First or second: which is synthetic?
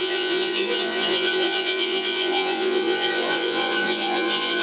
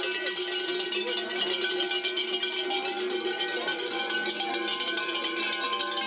first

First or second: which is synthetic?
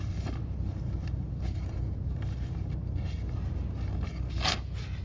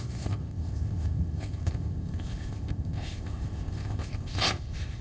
second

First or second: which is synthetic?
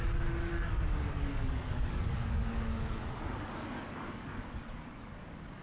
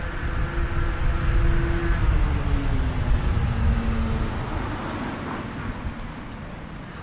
first